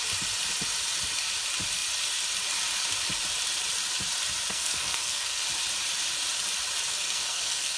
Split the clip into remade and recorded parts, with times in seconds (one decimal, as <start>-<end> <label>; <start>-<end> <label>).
0.0-4.5 recorded; 4.5-5.4 remade; 5.4-6.9 recorded; 6.9-7.8 remade